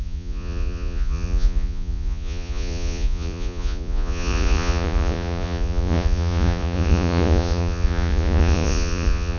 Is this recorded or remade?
remade